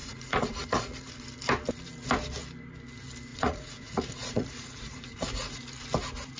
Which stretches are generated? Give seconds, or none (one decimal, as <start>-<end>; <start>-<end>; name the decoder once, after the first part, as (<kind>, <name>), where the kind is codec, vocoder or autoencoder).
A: 0.0-1.1 (vocoder, Vocos); 3.3-5.6